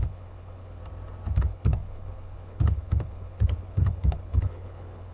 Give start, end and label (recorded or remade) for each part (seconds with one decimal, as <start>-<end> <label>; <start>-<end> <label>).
0.0-0.8 remade; 0.8-1.4 recorded; 1.4-5.1 remade